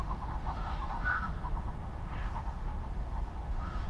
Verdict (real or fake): fake